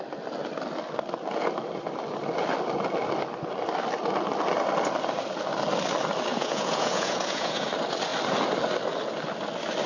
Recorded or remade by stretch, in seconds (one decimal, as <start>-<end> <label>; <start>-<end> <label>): 0.0-6.3 recorded; 6.3-7.7 remade; 7.7-9.9 recorded